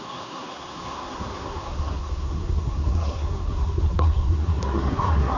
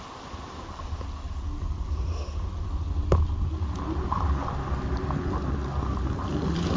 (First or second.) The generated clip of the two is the first